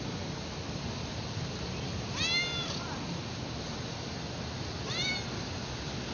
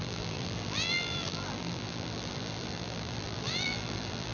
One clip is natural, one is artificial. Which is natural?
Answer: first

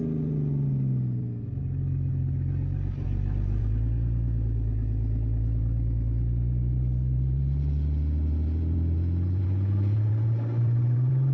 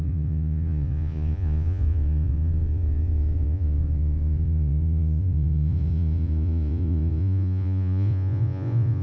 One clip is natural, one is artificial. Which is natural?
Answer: first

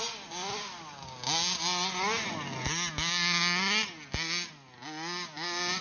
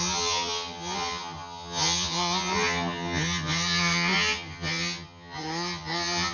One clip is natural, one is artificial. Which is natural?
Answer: first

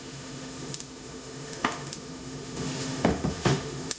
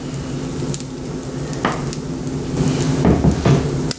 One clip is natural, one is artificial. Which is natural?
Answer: second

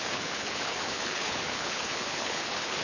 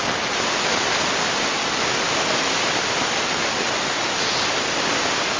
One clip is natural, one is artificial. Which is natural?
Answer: second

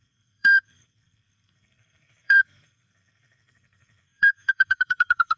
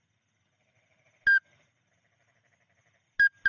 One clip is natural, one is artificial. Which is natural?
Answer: second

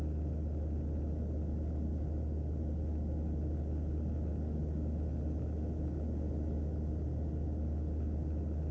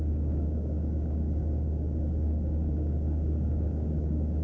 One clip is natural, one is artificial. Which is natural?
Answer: first